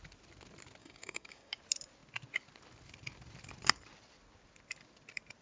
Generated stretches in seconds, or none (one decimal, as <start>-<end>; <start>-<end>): 0.8-1.6